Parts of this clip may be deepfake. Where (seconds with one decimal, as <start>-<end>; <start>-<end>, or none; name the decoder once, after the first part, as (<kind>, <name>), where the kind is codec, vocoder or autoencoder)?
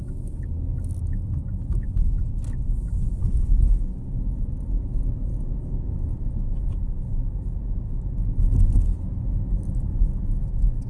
3.2-3.9 (codec, HILCodec)